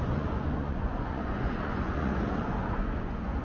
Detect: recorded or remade remade